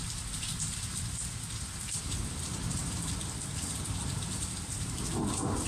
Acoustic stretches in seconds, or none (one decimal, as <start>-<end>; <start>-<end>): 0.6-2.8; 3.7-5.7